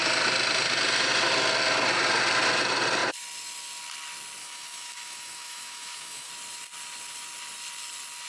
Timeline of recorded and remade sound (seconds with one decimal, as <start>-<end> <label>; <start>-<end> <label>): 0.0-4.4 recorded; 4.4-6.3 remade; 6.3-8.3 recorded